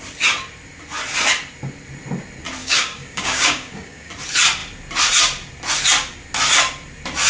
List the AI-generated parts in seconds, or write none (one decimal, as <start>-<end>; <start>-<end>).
2.6-4.1